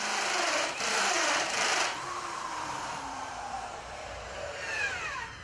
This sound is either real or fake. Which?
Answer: fake